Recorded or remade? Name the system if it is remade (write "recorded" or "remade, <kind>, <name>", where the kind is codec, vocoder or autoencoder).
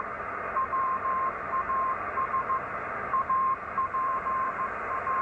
remade, vocoder, BigVGAN v2